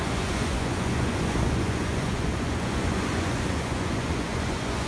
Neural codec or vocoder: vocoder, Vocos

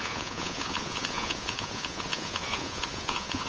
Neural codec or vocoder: vocoder, Vocos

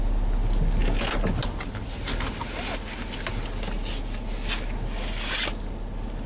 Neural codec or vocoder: none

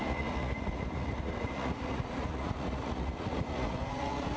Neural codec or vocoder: vocoder, Vocos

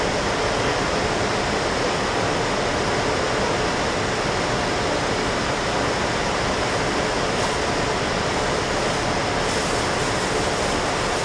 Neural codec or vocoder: none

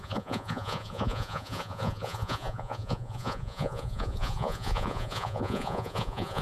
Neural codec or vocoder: vocoder, Vocos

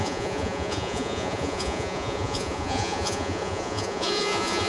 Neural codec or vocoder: vocoder, Vocos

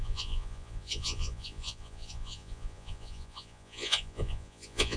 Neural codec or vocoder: vocoder, Vocos